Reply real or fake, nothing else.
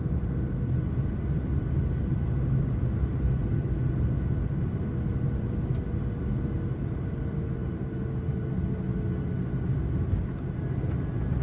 real